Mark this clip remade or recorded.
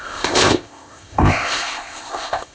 remade